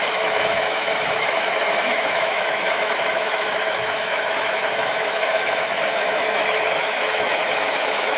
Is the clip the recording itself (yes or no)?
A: no